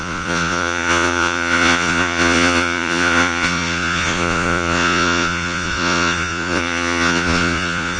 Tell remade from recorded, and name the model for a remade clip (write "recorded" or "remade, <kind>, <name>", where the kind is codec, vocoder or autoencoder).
remade, vocoder, Vocos